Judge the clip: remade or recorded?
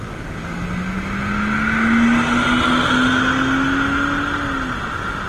recorded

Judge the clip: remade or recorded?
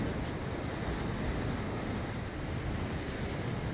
recorded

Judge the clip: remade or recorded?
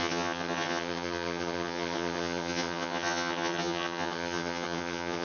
remade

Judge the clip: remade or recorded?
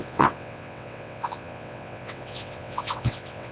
remade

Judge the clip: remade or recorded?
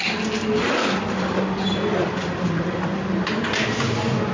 recorded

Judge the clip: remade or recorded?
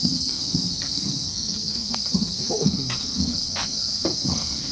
remade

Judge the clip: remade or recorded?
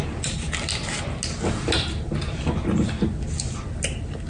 recorded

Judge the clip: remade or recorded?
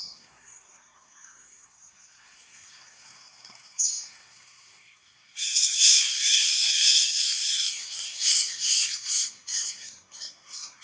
remade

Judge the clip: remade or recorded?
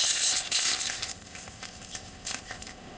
remade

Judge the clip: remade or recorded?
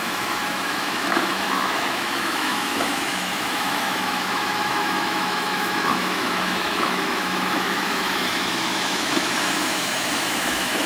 remade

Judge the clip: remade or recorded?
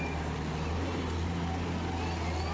recorded